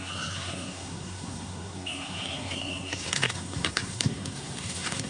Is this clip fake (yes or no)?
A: yes